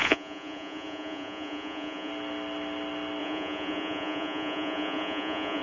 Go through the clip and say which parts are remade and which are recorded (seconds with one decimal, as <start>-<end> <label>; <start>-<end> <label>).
0.0-2.1 remade; 2.1-3.2 recorded; 3.2-5.6 remade